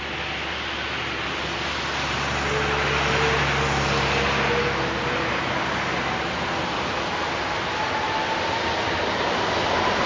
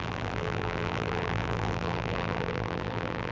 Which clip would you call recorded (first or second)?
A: first